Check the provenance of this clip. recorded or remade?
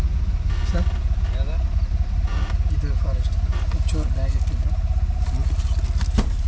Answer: recorded